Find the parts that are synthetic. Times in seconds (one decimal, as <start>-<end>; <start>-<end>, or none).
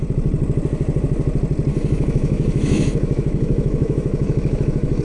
1.7-5.0